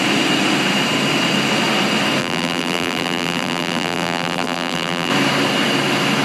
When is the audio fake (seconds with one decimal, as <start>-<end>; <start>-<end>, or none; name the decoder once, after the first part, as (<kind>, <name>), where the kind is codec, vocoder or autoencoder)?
2.2-5.1 (vocoder, BigVGAN v2)